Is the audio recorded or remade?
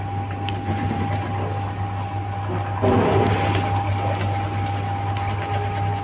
recorded